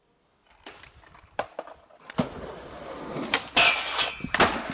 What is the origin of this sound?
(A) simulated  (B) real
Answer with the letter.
A